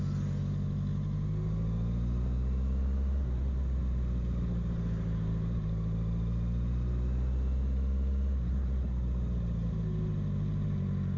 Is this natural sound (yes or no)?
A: yes